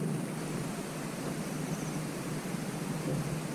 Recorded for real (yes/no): yes